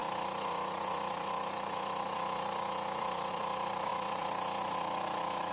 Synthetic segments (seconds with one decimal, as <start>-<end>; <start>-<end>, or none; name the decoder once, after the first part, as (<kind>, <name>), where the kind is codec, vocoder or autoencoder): 0.0-5.5 (vocoder, Vocos)